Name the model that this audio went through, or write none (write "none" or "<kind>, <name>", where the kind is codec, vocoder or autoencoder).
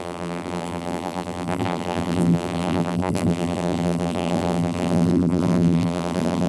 vocoder, BigVGAN v2